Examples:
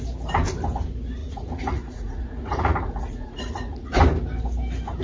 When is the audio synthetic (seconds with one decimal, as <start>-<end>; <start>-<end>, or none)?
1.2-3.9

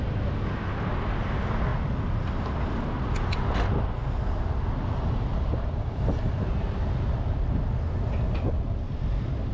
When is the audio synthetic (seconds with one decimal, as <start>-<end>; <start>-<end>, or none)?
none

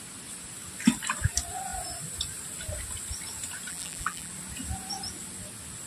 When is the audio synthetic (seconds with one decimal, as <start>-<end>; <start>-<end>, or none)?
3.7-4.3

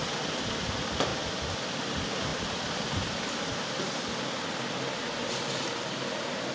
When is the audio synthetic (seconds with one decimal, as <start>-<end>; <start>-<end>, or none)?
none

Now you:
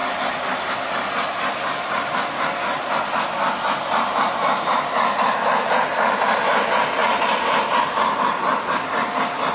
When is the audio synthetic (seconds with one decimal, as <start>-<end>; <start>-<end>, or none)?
none

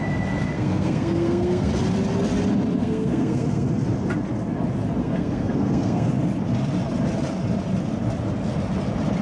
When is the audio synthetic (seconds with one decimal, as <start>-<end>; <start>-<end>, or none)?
0.4-1.7; 2.8-3.7; 5.0-6.1